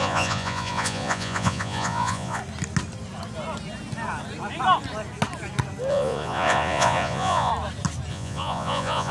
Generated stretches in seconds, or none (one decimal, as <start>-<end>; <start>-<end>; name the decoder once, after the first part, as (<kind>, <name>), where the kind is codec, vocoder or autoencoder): 0.0-2.4 (vocoder, Vocos); 5.9-7.5; 8.1-9.1